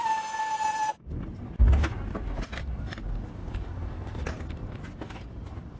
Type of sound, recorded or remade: recorded